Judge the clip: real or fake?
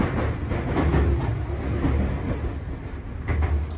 real